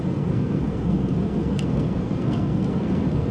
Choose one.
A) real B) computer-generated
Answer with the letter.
B